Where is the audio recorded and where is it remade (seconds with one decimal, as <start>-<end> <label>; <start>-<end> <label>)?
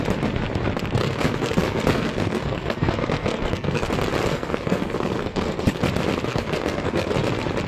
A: 0.0-1.0 recorded; 1.0-3.9 remade; 3.9-4.3 recorded; 4.3-5.8 remade; 5.8-6.3 recorded; 6.3-7.1 remade; 7.1-7.7 recorded